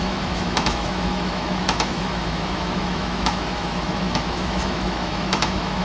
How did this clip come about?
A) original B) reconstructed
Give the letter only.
B